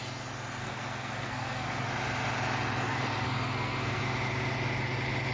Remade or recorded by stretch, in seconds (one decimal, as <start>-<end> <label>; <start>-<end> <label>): 0.0-0.6 recorded; 0.6-1.9 remade; 1.9-2.9 recorded; 2.9-4.0 remade; 4.0-5.3 recorded